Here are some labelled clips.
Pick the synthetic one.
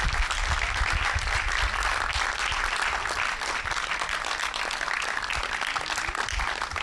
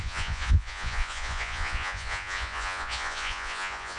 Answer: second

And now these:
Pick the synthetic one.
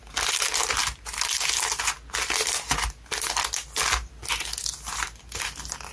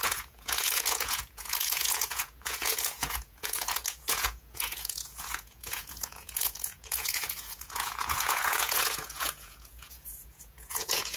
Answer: second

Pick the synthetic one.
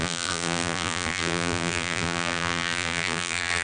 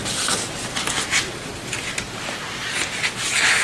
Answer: first